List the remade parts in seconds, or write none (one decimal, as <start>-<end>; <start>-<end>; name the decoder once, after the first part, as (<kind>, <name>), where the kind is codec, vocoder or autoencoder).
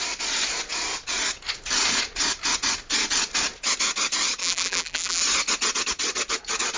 4.4-5.2 (vocoder, BigVGAN v2)